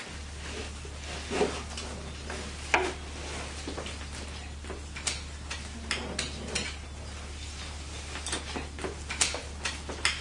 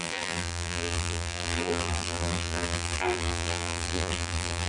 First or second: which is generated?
second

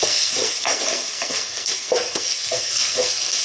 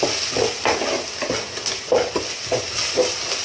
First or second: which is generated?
first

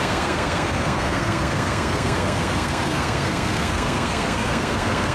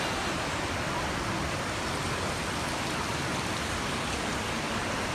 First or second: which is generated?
first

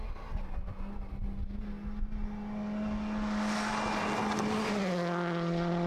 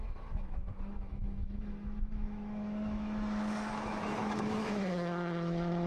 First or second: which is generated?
second